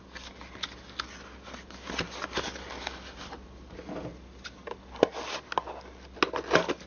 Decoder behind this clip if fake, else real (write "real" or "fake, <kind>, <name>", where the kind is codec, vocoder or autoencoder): real